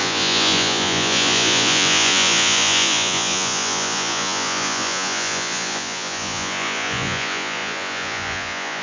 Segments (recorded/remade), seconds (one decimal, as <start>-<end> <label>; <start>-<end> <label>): 0.0-8.8 remade